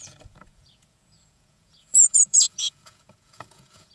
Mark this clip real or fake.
fake